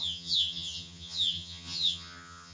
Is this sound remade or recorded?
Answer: remade